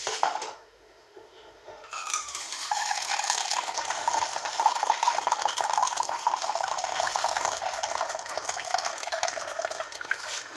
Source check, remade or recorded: remade